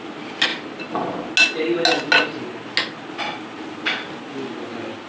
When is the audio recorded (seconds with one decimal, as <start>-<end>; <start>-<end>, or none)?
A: 0.0-5.1

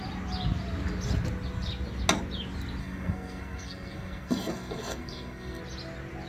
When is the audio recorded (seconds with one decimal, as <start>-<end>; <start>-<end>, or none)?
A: 0.0-2.8; 5.6-6.3

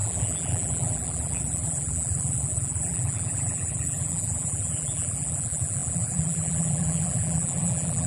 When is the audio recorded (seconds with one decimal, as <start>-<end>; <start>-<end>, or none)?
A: none

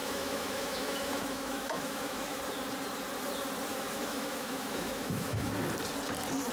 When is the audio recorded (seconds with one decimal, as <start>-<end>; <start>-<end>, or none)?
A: 2.4-3.7; 5.5-6.5

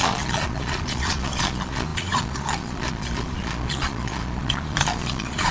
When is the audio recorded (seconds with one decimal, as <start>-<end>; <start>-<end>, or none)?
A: none